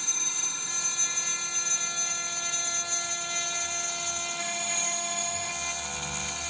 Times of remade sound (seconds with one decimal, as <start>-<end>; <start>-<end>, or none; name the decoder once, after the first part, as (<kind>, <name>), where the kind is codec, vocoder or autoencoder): 0.0-0.7 (autoencoder, DAC-VAE); 4.4-5.5